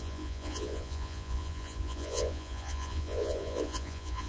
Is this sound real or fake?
fake